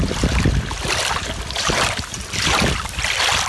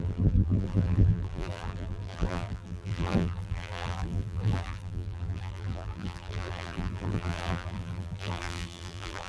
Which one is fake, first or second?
second